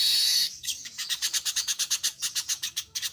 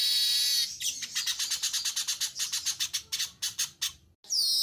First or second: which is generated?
first